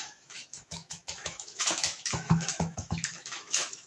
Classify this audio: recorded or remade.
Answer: remade